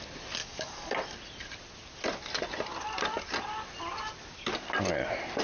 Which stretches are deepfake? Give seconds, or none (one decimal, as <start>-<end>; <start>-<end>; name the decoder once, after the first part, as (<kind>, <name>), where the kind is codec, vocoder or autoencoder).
0.4-0.9 (codec, DAC)